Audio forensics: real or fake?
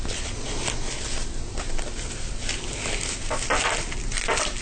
real